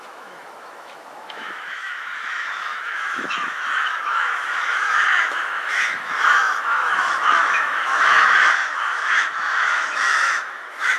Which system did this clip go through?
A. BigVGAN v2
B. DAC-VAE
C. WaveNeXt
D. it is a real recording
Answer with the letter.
B